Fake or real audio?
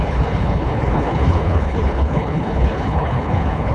fake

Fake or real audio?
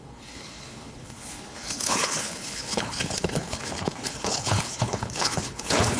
fake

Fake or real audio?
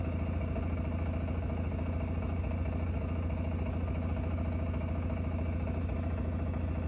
real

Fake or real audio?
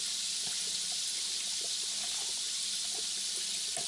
real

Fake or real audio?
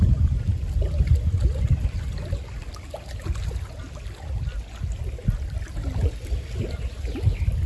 real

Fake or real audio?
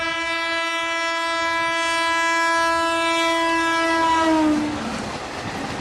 real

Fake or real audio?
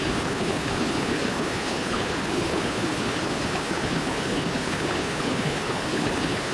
fake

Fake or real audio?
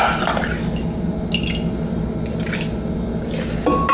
real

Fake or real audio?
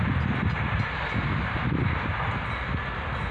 real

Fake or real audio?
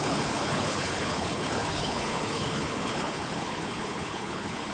fake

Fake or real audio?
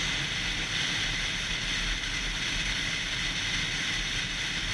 real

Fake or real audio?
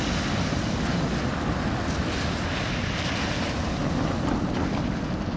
real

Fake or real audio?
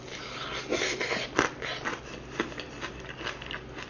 real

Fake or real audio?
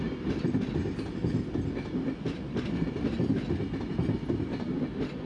real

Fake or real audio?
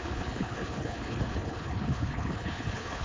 fake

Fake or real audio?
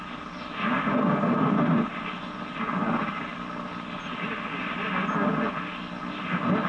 real